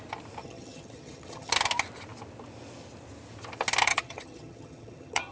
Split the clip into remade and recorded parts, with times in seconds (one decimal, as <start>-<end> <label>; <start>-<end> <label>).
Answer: 0.0-0.4 recorded; 0.4-1.5 remade; 1.5-3.9 recorded; 3.9-5.3 remade